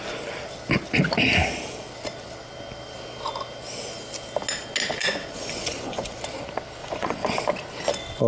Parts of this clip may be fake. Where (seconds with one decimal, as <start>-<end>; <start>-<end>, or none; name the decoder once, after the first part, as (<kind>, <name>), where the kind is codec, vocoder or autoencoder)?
5.0-6.2 (vocoder, Vocos); 6.8-7.4